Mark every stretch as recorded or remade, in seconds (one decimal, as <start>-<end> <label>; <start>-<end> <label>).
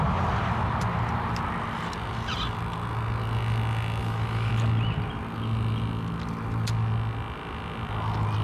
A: 0.0-4.0 recorded; 4.0-4.5 remade; 4.5-8.4 recorded